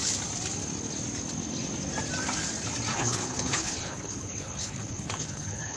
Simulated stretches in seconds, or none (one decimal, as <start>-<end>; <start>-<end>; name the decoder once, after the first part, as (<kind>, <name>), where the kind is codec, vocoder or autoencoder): 2.9-5.8 (codec, HILCodec)